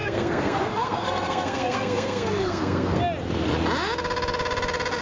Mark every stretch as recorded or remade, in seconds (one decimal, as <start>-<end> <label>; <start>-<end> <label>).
0.0-3.0 remade; 3.0-5.0 recorded